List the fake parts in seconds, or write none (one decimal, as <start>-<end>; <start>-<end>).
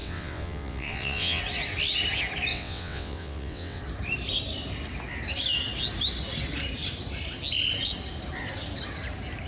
0.0-1.4; 2.5-3.8